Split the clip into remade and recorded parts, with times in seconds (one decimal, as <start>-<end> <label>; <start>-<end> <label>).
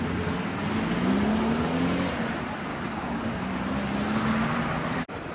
0.0-2.7 recorded; 2.7-3.5 remade; 3.5-5.3 recorded